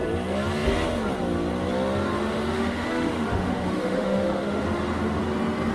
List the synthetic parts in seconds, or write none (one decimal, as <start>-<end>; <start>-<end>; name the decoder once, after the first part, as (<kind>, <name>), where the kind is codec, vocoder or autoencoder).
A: 2.1-5.2 (autoencoder, DAC-VAE)